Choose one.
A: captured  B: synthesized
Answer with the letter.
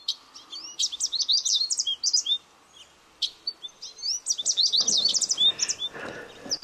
A